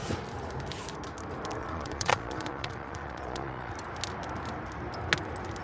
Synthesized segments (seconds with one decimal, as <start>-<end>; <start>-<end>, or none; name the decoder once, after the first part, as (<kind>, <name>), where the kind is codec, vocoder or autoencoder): 1.6-3.7 (vocoder, Vocos)